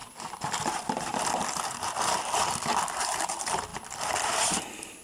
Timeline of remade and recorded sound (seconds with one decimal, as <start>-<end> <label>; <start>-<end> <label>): 0.0-5.0 remade